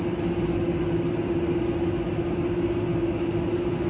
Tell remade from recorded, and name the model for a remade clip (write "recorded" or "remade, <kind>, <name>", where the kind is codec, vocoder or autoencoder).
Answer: recorded